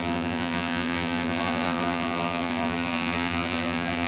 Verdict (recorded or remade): remade